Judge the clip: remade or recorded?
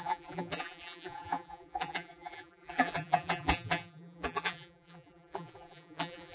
remade